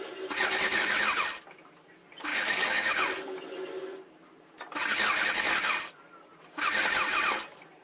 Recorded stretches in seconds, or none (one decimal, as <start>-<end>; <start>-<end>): 0.0-2.3; 2.9-7.8